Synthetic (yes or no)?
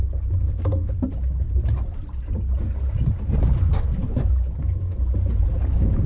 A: no